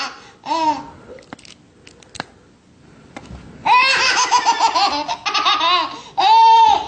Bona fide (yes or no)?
yes